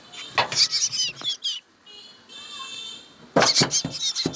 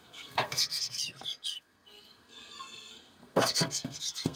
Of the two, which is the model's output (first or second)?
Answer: second